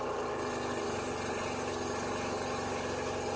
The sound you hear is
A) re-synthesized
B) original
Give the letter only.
B